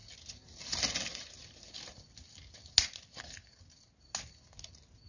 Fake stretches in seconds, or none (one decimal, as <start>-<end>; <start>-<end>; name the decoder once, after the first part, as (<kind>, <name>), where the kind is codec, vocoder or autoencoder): none